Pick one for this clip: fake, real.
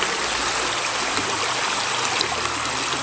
real